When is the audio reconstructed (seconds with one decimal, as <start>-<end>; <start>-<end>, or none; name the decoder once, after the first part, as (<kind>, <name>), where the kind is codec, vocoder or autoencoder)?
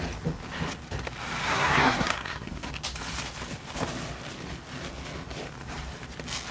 1.4-2.7 (codec, SNAC)